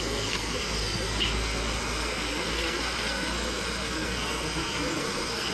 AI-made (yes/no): yes